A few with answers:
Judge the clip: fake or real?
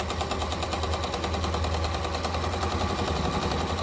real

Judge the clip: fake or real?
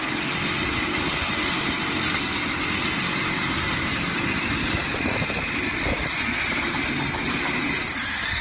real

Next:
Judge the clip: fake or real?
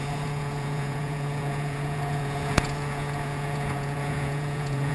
fake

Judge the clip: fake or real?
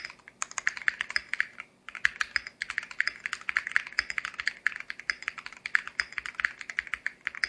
real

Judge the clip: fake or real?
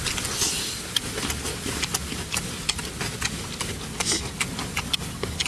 real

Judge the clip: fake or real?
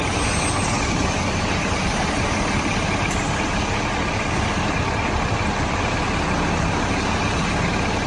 real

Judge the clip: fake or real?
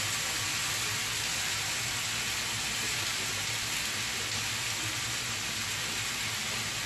real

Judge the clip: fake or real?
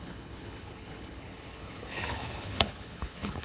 fake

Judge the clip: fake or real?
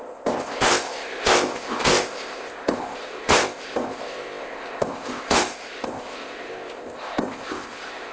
fake